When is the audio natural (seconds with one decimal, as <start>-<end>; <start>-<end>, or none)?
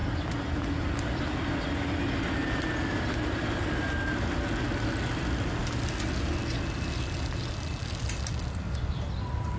0.0-9.6